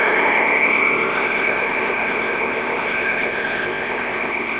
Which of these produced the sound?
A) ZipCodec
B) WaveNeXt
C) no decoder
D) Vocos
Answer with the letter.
A